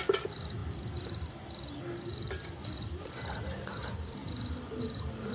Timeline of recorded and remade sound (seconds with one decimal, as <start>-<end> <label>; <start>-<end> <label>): 0.0-5.3 recorded